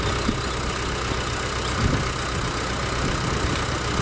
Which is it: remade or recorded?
recorded